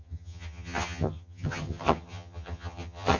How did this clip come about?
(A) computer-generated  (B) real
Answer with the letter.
A